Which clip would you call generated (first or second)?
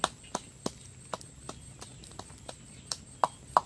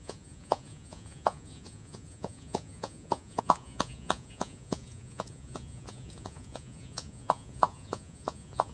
second